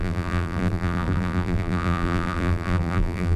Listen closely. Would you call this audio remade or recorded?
remade